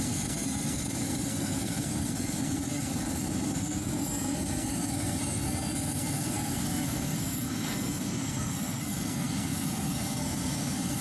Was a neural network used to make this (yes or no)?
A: yes